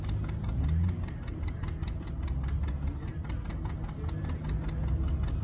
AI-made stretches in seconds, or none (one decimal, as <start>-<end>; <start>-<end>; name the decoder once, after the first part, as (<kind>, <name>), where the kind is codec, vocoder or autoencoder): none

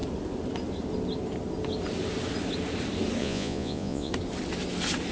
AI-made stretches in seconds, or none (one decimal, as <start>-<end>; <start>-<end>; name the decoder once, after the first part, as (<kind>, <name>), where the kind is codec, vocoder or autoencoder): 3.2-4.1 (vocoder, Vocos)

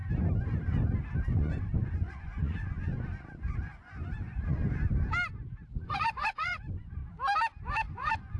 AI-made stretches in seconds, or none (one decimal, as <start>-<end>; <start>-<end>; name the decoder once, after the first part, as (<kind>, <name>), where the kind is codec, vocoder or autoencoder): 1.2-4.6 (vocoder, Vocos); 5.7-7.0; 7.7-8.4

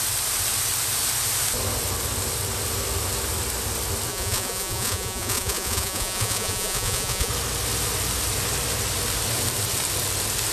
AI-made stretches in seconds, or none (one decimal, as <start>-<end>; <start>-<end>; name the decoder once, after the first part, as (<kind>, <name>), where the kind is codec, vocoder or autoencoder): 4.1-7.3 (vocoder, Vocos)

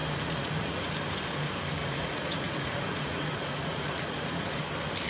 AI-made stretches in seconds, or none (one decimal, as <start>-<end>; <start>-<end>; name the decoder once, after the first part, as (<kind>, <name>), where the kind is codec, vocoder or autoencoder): 0.0-0.9 (vocoder, Vocos); 1.8-4.6